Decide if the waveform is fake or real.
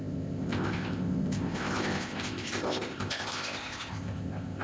fake